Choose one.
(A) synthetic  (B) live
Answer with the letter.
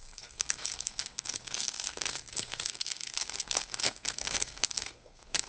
A